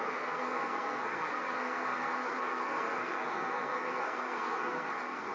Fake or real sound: fake